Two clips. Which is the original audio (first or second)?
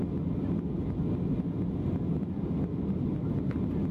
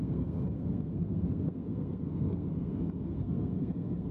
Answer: first